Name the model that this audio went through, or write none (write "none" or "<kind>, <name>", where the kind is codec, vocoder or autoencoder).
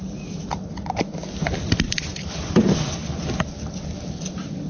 none